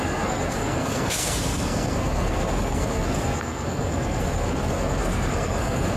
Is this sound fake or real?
fake